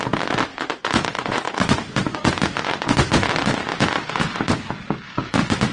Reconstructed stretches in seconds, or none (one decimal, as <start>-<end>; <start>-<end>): 0.5-3.3; 3.7-4.2